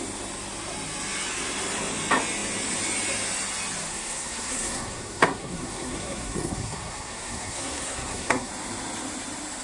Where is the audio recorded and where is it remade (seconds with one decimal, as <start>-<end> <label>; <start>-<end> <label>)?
0.0-3.9 recorded; 3.9-8.5 remade; 8.5-9.6 recorded